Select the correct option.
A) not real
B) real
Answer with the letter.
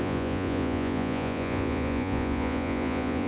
A